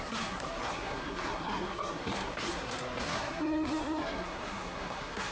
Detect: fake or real fake